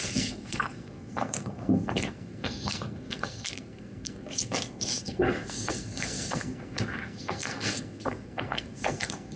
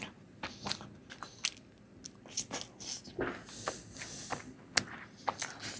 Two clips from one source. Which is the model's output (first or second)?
first